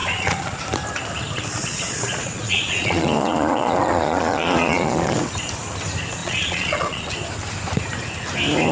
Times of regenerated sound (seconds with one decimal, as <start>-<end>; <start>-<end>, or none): 0.0-0.6; 1.6-5.2; 6.2-7.1